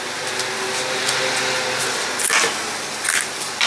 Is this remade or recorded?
recorded